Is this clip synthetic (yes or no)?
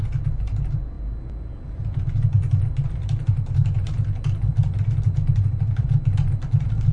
no